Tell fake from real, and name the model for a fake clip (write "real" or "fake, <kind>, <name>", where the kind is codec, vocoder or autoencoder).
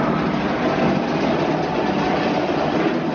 real